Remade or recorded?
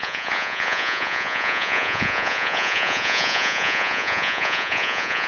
remade